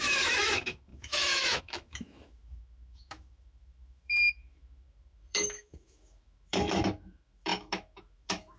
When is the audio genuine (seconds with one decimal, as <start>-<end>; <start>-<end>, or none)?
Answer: none